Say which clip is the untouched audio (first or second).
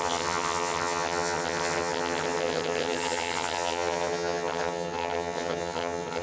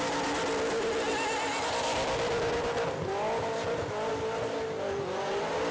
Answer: second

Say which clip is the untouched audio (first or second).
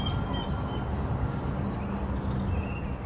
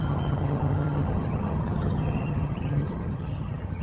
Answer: first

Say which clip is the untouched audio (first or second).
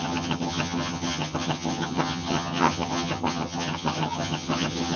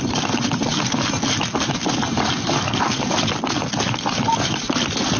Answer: second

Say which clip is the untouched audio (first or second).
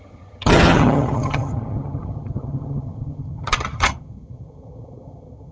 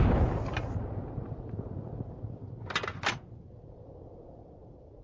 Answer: second